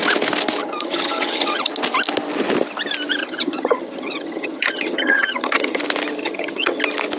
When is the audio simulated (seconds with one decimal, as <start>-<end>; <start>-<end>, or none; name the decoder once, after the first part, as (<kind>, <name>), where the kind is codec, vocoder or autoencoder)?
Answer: 0.6-1.7 (vocoder, HiFi-GAN); 3.2-5.8; 6.2-6.8